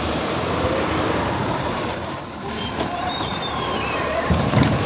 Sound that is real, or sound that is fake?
fake